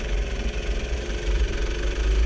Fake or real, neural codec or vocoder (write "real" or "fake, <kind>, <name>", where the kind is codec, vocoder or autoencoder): real